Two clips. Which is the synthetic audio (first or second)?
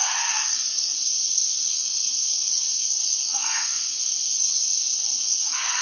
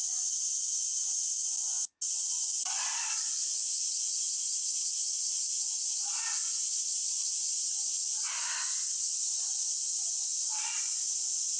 first